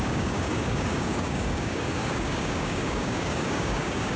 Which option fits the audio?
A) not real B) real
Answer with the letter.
A